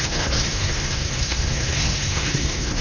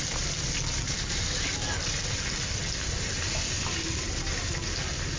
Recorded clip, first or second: second